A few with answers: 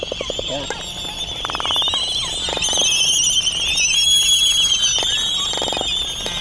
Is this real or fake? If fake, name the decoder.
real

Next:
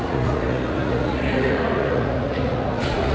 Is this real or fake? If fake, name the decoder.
fake, vocoder, Vocos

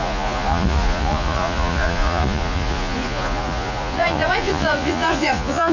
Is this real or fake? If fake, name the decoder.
fake, vocoder, Vocos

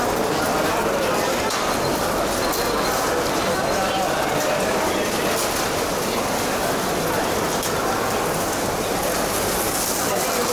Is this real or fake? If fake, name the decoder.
real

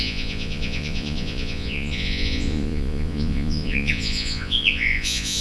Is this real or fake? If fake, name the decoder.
fake, vocoder, Vocos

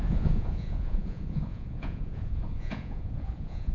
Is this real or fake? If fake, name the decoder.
fake, vocoder, Vocos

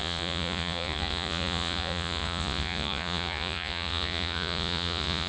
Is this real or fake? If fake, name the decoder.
fake, vocoder, Vocos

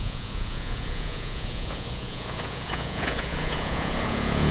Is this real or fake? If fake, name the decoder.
fake, vocoder, Vocos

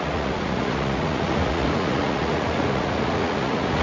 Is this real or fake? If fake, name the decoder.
fake, vocoder, Vocos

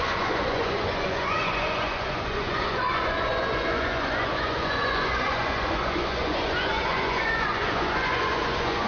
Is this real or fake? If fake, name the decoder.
fake, vocoder, Vocos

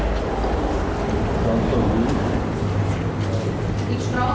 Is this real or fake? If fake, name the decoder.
real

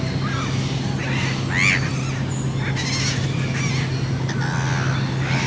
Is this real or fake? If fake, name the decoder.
real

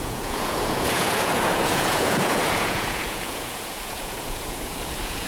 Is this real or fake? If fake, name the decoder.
fake, vocoder, Vocos